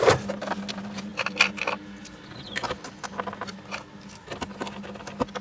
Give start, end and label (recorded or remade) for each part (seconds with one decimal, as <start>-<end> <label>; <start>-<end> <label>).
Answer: 0.0-5.4 recorded